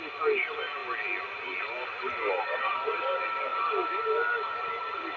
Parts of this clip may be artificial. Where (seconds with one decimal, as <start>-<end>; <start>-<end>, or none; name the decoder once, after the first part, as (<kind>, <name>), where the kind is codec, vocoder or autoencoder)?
none

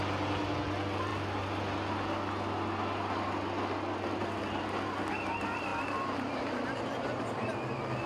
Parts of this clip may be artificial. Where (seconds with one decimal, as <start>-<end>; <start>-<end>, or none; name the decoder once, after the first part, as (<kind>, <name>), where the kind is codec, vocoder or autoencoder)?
none

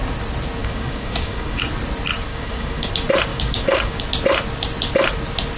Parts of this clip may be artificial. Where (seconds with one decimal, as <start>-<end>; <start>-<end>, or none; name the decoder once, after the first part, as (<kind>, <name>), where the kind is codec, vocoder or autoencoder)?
0.6-1.6 (codec, DAC); 2.3-2.9; 3.3-4.0

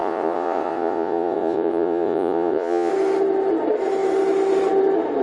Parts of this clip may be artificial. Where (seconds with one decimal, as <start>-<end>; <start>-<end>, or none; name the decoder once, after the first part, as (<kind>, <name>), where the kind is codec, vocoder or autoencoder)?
0.0-2.9 (vocoder, Vocos)

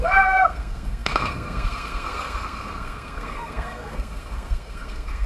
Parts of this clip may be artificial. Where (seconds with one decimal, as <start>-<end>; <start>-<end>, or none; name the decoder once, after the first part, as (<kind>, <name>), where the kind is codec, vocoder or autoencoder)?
0.0-5.3 (codec, SNAC)

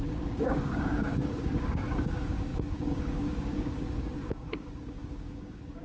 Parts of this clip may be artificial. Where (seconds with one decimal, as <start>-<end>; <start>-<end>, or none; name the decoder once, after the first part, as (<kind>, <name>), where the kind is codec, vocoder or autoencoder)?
0.0-5.8 (codec, DAC)